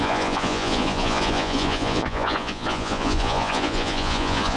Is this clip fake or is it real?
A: fake